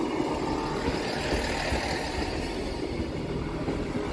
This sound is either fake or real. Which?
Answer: real